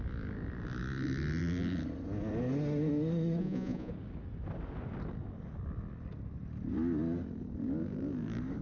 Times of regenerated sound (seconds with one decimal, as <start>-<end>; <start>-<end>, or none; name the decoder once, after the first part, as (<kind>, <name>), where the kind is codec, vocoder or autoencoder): 3.4-3.9 (vocoder, Vocos)